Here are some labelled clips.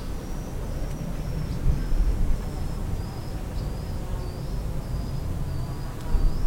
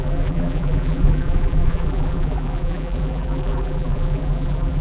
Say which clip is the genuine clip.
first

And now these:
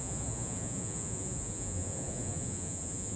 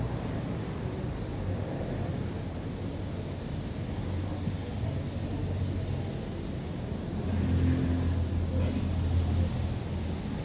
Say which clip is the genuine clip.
second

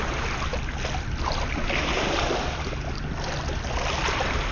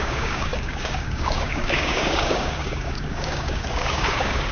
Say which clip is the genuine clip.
first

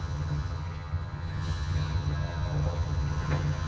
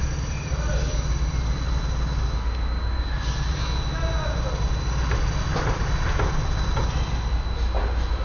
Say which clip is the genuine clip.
second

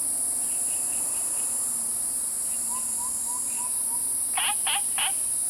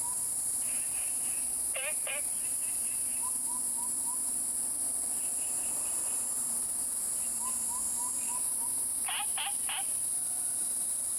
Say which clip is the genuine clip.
first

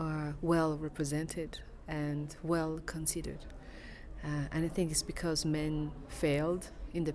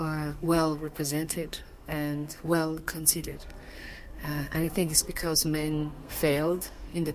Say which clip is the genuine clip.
first